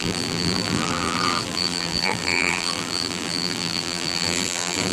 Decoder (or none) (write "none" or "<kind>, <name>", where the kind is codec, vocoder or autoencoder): vocoder, BigVGAN v2